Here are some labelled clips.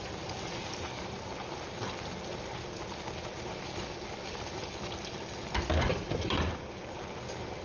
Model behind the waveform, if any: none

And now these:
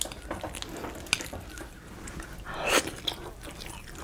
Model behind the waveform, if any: none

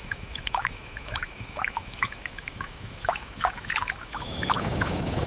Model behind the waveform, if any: autoencoder, DAC-VAE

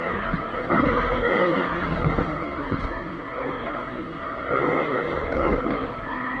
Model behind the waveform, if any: codec, SNAC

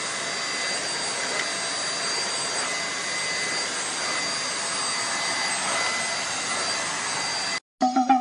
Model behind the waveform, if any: none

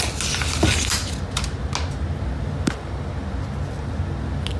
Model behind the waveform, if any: none